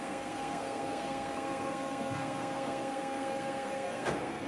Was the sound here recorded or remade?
remade